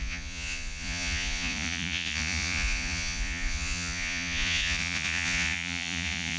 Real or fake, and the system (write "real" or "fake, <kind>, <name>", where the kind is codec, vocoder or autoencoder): fake, vocoder, Vocos